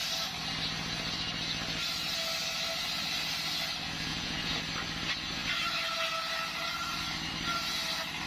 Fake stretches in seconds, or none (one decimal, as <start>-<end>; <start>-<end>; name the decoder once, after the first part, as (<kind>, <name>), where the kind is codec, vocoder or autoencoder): 4.1-4.6 (vocoder, Vocos)